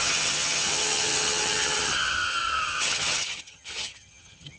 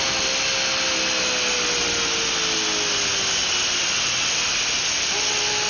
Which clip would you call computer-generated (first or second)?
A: first